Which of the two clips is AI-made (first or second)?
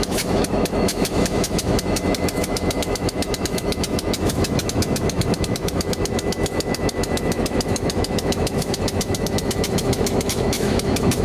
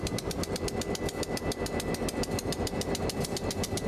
first